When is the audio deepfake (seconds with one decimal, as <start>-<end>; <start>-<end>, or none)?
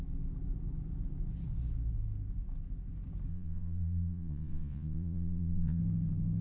3.3-5.8